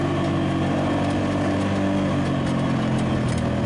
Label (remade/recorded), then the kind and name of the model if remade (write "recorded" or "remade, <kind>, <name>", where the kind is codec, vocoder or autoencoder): recorded